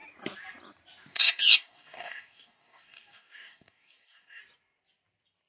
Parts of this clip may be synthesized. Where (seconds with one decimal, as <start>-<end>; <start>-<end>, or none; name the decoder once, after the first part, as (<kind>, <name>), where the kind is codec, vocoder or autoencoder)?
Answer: 1.1-4.4 (codec, DAC)